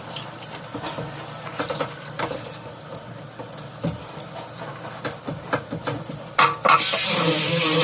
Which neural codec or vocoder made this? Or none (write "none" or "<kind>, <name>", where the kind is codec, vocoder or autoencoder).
none